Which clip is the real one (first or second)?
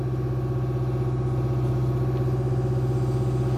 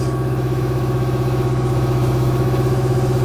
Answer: first